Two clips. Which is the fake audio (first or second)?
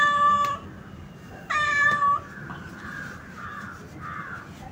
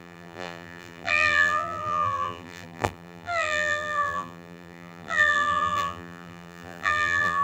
second